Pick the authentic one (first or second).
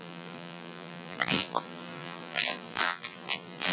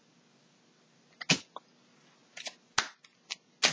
second